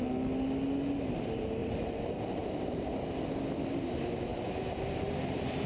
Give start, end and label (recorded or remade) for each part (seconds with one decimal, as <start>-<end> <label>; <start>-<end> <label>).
0.0-1.6 recorded; 1.6-2.8 remade; 2.8-4.3 recorded; 4.3-5.1 remade; 5.1-5.7 recorded